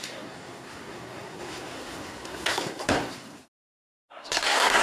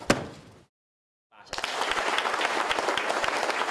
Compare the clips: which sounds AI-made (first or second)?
first